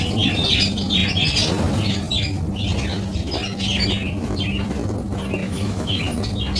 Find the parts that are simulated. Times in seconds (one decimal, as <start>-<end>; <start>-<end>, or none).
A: 5.4-6.0